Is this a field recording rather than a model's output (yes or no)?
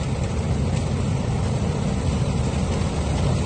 yes